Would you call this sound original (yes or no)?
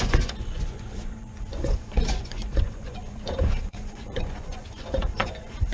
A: no